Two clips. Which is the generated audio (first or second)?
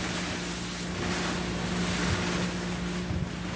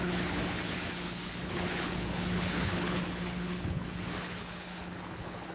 second